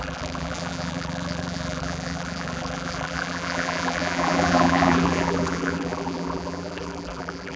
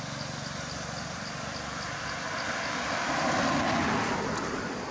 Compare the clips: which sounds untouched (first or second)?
second